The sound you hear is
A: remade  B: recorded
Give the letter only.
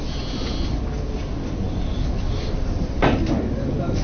B